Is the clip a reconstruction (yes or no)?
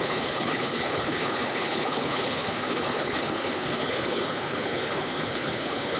yes